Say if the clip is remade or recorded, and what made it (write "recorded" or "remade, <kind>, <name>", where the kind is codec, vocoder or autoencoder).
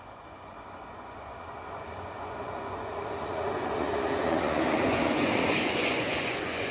remade, vocoder, Vocos